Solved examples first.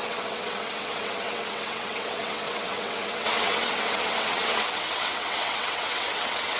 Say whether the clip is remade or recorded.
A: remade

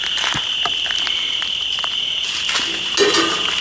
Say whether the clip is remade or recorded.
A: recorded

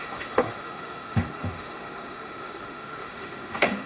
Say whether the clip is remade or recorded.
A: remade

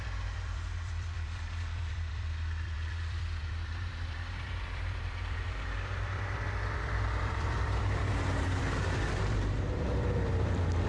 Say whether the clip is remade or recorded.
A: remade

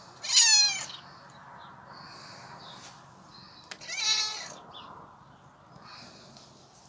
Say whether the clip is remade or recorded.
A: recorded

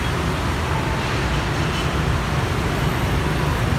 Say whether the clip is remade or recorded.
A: recorded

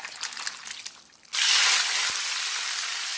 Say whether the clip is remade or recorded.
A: recorded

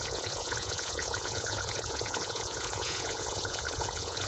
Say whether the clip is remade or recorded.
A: remade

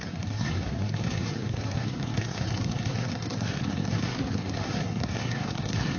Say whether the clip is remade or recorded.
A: remade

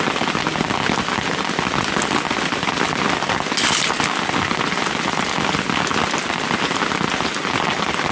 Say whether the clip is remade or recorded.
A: recorded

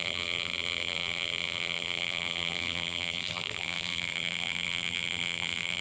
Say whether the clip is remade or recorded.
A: remade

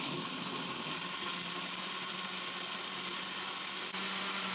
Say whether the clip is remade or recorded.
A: recorded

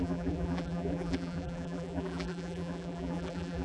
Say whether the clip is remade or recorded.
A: remade